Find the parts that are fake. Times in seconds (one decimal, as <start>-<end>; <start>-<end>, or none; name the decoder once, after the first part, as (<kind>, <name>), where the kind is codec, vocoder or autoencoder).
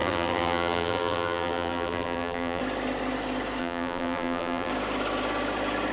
0.0-2.6 (vocoder, BigVGAN v2); 3.6-4.7